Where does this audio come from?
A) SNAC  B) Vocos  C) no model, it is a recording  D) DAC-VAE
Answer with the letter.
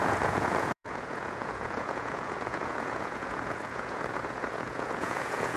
B